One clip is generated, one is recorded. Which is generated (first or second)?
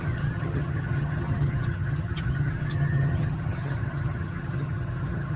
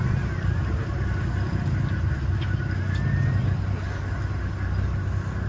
first